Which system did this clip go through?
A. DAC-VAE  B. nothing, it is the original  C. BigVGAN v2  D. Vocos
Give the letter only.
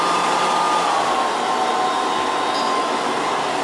B